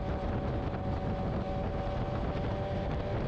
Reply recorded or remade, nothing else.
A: recorded